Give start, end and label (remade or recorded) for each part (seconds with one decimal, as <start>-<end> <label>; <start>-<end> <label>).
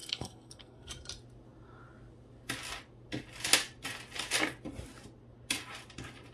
0.0-0.9 remade; 0.9-6.3 recorded